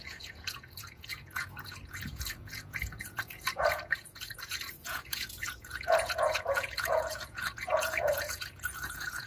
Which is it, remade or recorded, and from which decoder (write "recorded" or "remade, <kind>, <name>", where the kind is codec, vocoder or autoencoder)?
remade, vocoder, Vocos